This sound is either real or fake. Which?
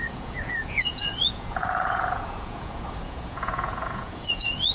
fake